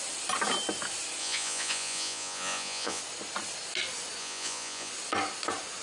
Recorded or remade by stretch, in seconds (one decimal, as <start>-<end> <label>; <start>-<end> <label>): 0.0-1.2 recorded; 1.2-3.0 remade; 3.0-4.2 recorded; 4.2-4.9 remade; 4.9-5.8 recorded